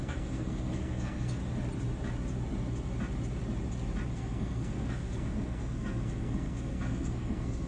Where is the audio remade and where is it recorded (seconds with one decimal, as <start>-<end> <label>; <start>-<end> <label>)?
0.0-1.4 remade; 1.4-4.1 recorded; 4.1-7.7 remade